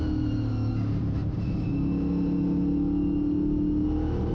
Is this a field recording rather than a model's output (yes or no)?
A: yes